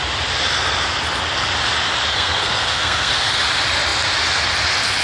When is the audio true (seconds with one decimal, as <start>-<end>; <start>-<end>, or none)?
0.0-2.1; 3.1-5.0